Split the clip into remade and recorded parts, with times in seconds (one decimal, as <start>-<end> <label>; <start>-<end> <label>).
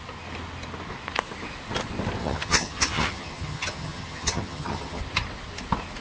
0.0-2.2 recorded; 2.2-5.0 remade; 5.0-6.0 recorded